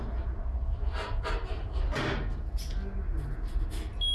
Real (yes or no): yes